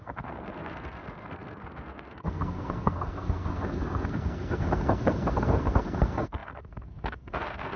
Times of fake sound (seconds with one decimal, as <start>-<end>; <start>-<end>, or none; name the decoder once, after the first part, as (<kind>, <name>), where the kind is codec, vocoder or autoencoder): 0.0-7.8 (codec, SNAC)